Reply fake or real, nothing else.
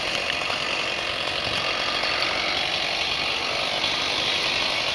real